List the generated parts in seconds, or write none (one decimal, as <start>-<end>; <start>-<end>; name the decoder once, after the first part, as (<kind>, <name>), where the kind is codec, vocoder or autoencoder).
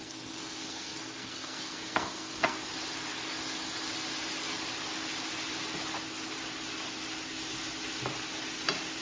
0.0-2.7 (codec, SNAC)